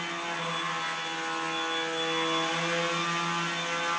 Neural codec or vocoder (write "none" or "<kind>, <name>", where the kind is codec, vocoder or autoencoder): none